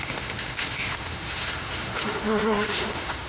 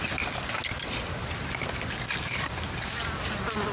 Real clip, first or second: second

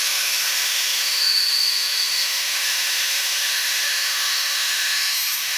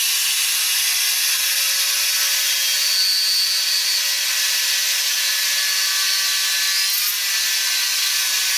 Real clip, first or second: second